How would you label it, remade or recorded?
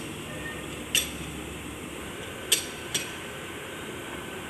recorded